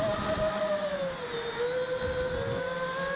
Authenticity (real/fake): real